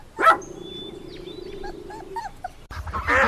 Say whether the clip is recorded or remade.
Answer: recorded